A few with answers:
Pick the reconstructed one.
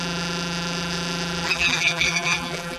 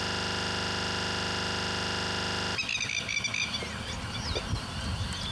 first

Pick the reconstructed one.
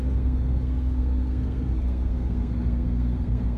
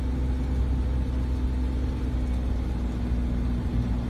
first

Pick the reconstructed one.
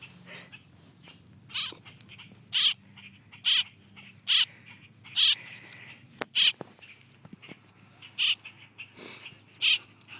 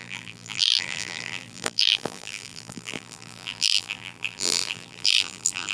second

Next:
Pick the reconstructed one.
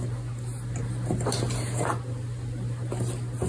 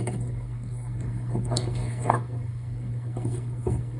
second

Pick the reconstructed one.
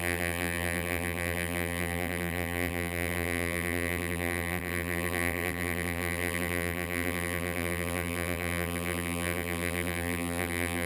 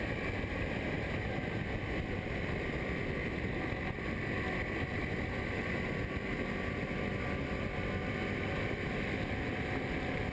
first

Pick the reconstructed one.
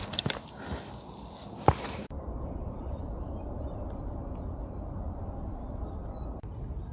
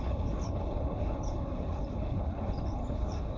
second